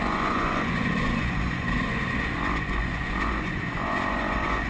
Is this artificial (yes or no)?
yes